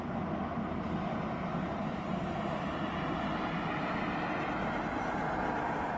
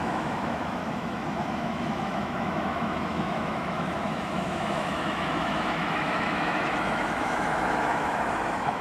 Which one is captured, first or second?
first